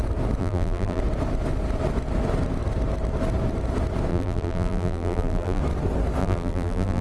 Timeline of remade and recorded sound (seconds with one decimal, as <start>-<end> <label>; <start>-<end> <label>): 0.0-0.4 recorded; 0.4-1.0 remade; 1.0-4.1 recorded; 4.1-5.6 remade; 5.6-6.2 recorded; 6.2-7.0 remade